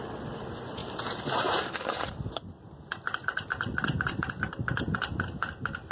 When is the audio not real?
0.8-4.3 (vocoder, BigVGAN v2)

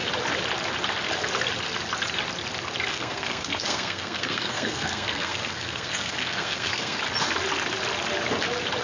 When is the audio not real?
2.9-7.0 (codec, SNAC)

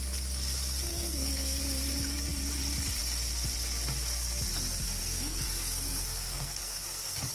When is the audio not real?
0.9-1.6 (codec, SNAC); 5.0-7.3

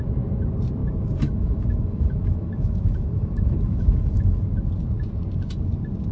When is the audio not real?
0.8-4.5 (autoencoder, DAC-VAE)